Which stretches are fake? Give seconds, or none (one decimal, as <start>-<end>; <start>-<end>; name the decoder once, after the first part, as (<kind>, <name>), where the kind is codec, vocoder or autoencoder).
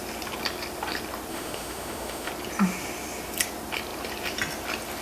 1.3-2.3 (autoencoder, DAC-VAE)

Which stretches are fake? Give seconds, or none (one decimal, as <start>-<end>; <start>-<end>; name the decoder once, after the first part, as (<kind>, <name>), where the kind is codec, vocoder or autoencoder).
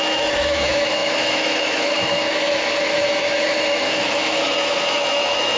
0.0-5.6 (autoencoder, DAC-VAE)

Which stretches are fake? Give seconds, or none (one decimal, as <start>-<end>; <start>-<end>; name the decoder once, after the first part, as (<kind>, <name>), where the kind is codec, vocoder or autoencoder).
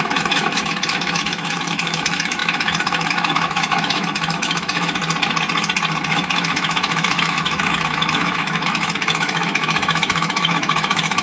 0.0-5.0 (autoencoder, DAC-VAE); 6.1-11.2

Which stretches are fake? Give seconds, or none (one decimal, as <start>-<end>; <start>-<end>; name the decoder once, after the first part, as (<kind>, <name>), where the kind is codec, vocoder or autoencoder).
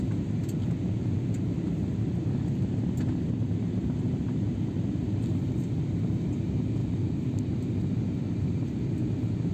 1.0-1.7 (vocoder, BigVGAN v2); 6.8-7.4